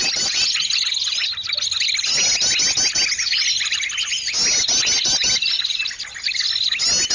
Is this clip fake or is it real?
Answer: real